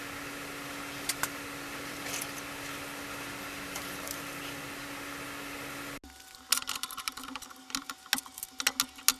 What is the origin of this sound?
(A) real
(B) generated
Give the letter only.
A